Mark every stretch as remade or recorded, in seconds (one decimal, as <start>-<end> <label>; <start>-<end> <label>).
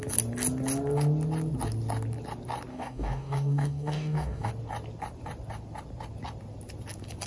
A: 0.0-2.7 recorded; 2.7-4.5 remade; 4.5-7.3 recorded